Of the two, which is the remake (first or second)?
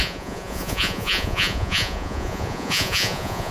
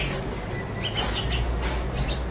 first